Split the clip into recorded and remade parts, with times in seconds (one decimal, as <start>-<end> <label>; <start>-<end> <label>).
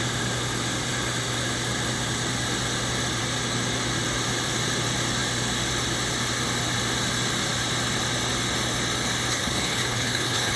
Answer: 0.0-9.3 recorded; 9.3-10.6 remade